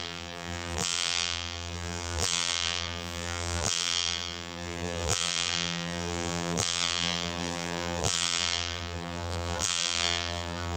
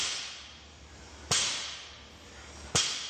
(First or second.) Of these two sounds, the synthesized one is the first